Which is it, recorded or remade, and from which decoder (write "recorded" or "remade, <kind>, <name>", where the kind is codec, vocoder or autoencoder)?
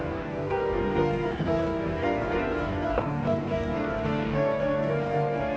remade, codec, DAC